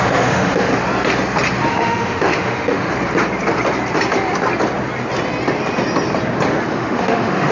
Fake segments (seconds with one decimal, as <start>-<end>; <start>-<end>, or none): 0.0-0.7; 1.7-2.9; 6.7-7.5